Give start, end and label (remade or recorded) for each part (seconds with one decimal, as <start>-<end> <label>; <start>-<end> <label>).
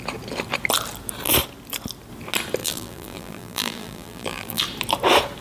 0.0-2.6 recorded; 2.6-4.6 remade; 4.6-5.4 recorded